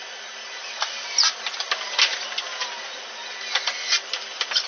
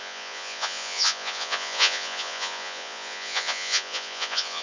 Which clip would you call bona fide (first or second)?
first